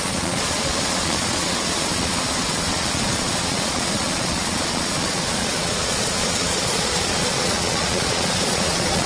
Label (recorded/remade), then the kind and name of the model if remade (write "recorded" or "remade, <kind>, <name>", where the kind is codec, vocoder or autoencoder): remade, vocoder, Vocos